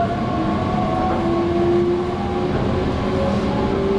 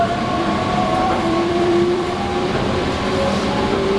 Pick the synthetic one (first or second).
second